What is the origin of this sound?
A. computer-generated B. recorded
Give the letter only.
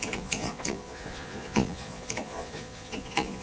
A